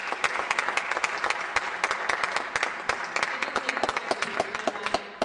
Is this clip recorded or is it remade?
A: recorded